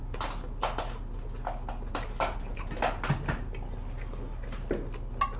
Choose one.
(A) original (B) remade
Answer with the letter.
A